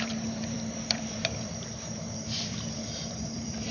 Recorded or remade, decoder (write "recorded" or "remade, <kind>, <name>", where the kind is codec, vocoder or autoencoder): remade, vocoder, BigVGAN v2